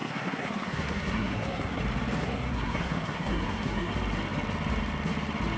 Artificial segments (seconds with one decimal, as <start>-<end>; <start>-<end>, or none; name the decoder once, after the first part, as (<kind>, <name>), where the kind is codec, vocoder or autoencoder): 0.0-1.8 (codec, SNAC); 2.2-3.9